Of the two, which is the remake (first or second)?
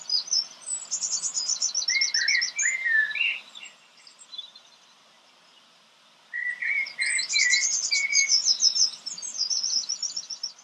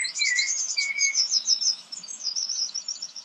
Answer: second